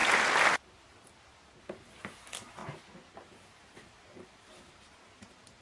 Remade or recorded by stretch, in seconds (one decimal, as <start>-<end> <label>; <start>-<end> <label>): 0.0-2.6 recorded; 2.6-5.6 remade

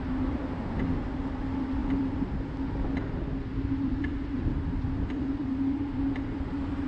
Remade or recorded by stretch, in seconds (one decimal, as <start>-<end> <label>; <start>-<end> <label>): 0.0-1.8 recorded; 1.8-2.5 remade; 2.5-3.5 recorded; 3.5-6.9 remade

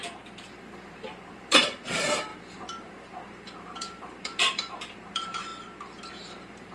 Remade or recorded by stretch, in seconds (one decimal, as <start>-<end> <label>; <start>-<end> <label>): 0.0-5.5 remade; 5.5-6.1 recorded; 6.1-6.7 remade

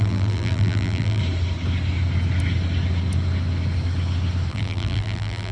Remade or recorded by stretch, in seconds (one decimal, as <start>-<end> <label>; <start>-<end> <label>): 0.0-1.2 remade; 1.2-4.5 recorded; 4.5-5.5 remade

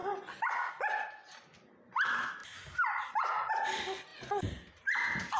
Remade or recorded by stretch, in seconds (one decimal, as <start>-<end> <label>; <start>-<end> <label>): 0.0-2.4 recorded; 2.4-3.5 remade; 3.5-4.1 recorded; 4.1-5.0 remade; 5.0-5.4 recorded

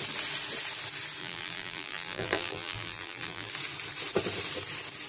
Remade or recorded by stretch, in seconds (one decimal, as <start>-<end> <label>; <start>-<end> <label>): 0.0-1.2 recorded; 1.2-3.5 remade; 3.5-5.1 recorded